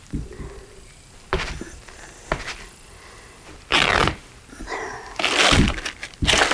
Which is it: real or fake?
real